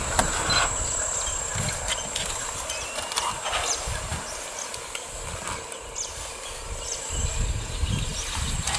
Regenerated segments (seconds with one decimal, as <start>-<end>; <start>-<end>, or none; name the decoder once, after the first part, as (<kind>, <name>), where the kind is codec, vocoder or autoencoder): none